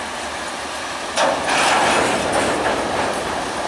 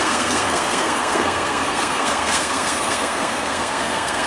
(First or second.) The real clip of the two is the first